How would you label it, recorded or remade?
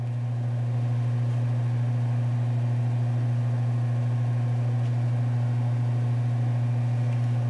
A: recorded